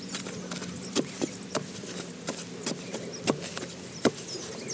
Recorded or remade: recorded